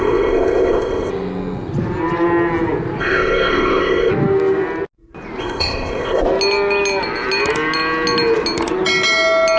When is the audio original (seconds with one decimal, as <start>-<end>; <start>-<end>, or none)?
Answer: 1.1-3.0; 4.1-5.4; 6.2-9.6